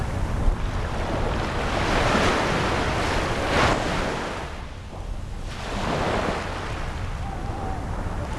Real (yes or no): yes